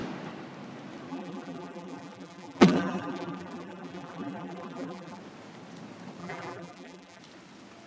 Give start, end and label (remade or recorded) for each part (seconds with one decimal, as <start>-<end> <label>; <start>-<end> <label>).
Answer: 0.0-1.1 recorded; 1.1-5.2 remade; 5.2-6.2 recorded; 6.2-7.2 remade; 7.2-7.9 recorded